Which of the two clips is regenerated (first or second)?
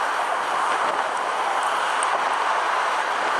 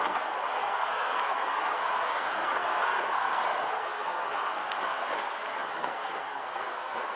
second